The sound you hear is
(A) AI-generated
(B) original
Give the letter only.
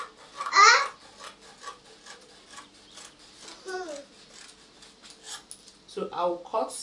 B